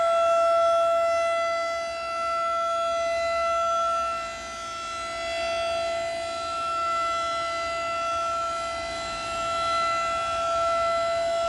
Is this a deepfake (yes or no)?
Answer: no